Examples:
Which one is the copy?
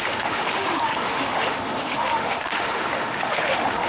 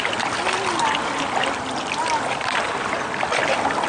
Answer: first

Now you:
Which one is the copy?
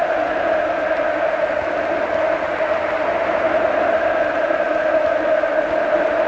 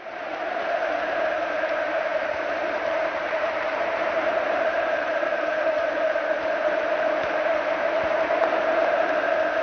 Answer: second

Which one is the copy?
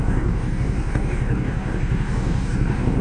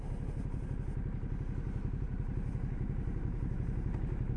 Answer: first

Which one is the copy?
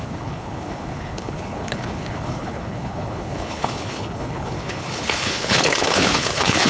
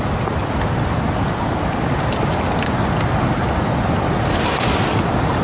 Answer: first